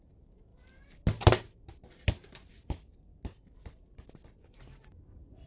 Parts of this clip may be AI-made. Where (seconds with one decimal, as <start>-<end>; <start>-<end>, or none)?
none